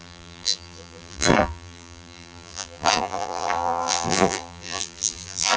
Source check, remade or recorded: remade